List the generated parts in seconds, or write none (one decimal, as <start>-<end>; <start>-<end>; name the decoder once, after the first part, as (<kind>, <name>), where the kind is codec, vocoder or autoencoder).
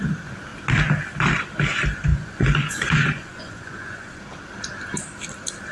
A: 2.1-4.2 (vocoder, Vocos)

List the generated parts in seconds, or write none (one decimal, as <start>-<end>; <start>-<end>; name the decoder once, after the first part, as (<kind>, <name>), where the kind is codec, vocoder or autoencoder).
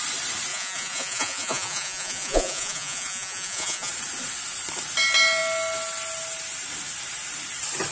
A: 0.5-3.9 (vocoder, Vocos)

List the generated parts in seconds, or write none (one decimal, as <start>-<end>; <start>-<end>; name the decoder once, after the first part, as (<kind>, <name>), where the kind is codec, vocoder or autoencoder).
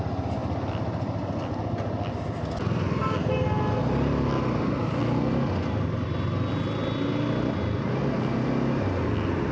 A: none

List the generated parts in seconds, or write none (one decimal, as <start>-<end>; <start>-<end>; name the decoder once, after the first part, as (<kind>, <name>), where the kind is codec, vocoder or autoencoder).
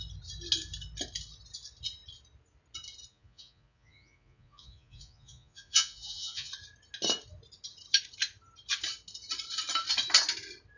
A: 3.1-6.5 (vocoder, Vocos)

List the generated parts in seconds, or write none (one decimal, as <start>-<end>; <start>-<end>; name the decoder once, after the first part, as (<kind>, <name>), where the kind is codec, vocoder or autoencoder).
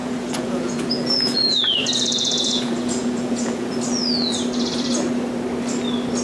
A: 0.0-3.7 (vocoder, Vocos)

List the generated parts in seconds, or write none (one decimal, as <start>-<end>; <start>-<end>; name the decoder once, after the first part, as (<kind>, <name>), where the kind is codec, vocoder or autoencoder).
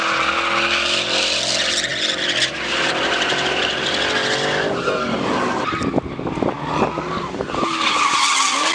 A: none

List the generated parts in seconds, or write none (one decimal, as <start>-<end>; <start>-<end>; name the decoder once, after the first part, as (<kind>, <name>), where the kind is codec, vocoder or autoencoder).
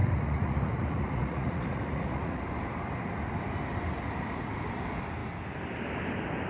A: 0.0-2.4 (vocoder, Vocos)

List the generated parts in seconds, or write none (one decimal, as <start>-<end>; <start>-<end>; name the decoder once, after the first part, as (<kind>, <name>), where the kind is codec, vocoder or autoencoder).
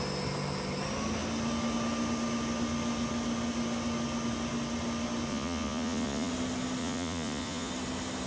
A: 5.3-6.3 (vocoder, Vocos); 6.8-7.7